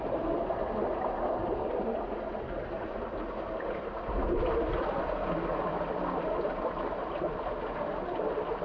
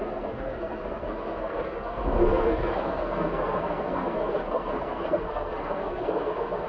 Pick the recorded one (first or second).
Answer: first